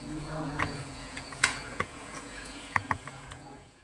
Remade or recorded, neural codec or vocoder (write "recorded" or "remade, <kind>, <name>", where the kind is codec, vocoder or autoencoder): remade, vocoder, Vocos